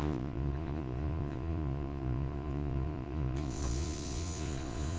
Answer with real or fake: fake